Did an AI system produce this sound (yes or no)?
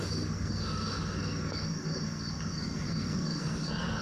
yes